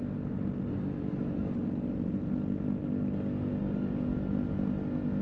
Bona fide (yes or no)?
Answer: yes